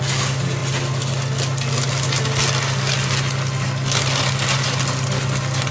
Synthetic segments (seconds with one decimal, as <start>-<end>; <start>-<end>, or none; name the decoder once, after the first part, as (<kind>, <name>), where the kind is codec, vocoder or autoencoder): none